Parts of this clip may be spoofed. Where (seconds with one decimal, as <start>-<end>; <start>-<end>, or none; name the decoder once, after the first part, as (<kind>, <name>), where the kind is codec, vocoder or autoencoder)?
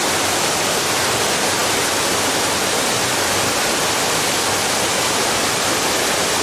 0.0-6.4 (vocoder, BigVGAN v2)